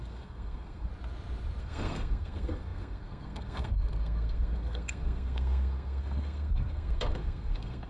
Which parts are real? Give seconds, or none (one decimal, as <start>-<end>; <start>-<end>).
0.9-1.6